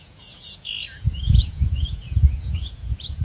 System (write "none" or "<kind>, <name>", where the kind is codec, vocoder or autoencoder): vocoder, Vocos